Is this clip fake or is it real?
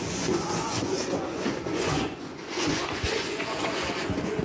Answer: fake